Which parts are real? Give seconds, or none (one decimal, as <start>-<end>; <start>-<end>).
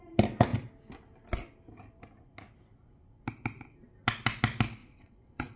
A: 0.0-4.8